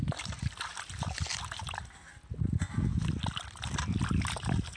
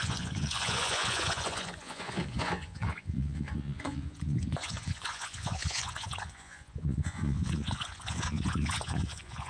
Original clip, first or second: first